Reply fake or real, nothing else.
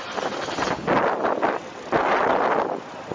real